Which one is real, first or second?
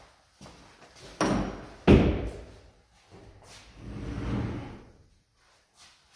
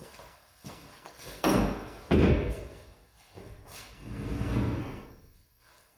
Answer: first